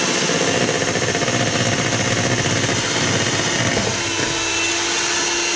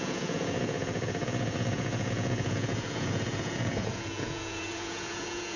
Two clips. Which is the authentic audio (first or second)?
first